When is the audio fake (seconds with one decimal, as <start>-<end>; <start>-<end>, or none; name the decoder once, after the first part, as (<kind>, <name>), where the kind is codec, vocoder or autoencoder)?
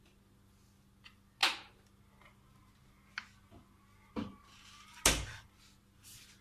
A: none